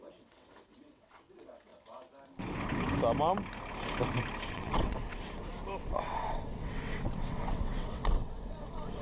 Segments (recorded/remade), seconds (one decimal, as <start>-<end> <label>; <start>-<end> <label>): 0.0-1.7 remade; 1.7-4.5 recorded; 4.5-5.0 remade; 5.0-5.8 recorded; 5.8-9.0 remade